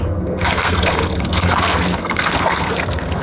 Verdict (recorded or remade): remade